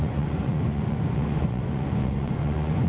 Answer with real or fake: fake